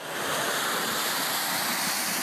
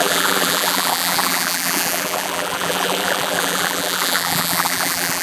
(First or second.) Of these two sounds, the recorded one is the first